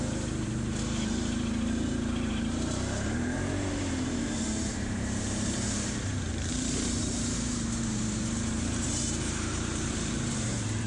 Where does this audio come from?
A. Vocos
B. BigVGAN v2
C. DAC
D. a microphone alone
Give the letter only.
B